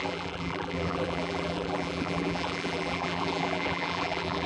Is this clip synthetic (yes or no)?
yes